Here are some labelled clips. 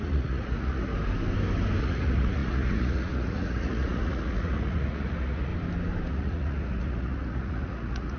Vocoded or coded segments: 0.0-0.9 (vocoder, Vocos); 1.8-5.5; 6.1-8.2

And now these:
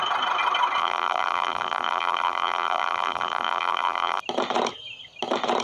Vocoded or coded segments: 0.8-4.2 (vocoder, BigVGAN v2)